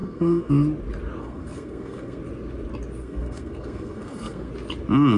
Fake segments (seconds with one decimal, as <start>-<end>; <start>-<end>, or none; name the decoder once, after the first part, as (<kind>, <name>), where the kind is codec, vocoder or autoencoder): 0.0-0.5 (codec, SNAC); 1.2-2.2; 3.0-4.5